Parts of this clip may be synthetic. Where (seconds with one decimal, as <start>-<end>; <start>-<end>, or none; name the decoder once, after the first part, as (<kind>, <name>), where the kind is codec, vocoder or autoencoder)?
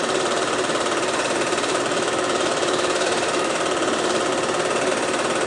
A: 1.7-3.6 (autoencoder, DAC-VAE)